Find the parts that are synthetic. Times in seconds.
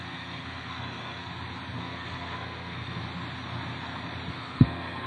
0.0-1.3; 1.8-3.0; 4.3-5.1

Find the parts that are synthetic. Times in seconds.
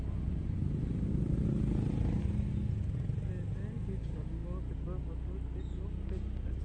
none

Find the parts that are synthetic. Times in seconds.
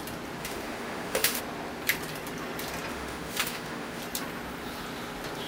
0.4-1.4; 2.9-4.0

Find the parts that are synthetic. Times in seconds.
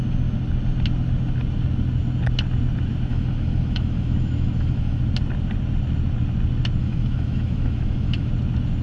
3.1-5.0; 6.8-8.3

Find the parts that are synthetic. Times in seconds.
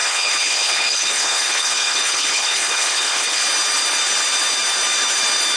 0.0-3.4